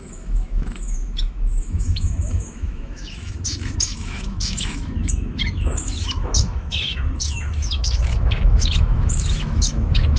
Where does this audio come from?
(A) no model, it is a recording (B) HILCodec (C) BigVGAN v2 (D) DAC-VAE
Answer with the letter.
D